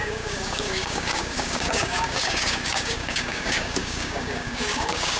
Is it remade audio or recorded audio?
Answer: remade